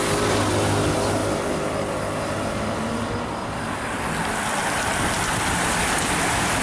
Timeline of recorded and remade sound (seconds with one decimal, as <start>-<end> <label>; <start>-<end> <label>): 0.0-6.6 recorded